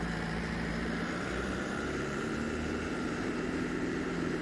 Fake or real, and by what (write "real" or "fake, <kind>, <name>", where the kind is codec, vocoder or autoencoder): fake, vocoder, BigVGAN v2